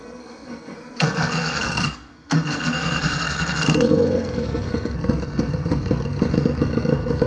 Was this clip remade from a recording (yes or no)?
yes